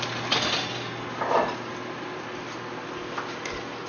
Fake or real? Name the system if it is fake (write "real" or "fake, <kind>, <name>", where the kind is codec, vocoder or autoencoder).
real